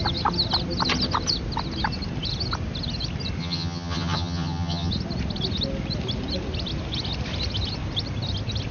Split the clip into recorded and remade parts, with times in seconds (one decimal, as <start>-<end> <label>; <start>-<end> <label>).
0.0-3.4 recorded; 3.4-4.9 remade; 4.9-8.7 recorded